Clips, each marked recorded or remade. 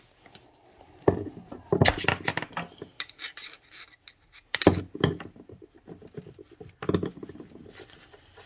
recorded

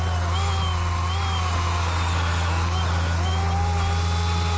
recorded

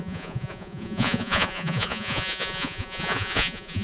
remade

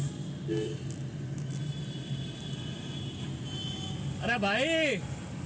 recorded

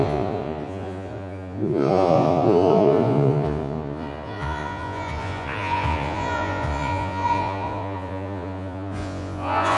remade